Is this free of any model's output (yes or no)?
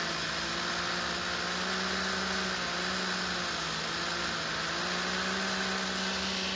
yes